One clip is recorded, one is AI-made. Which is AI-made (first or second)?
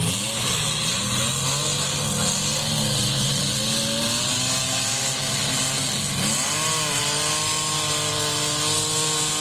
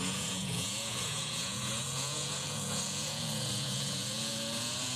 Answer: second